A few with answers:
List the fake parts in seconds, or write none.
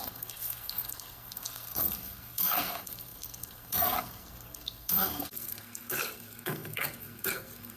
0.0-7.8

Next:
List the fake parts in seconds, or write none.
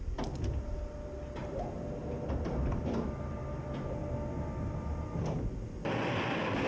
none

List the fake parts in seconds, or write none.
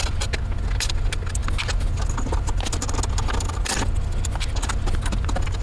none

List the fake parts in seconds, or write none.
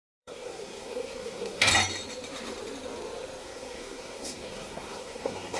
0.0-1.7; 3.4-5.6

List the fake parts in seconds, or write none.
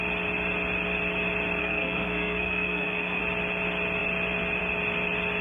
1.6-3.2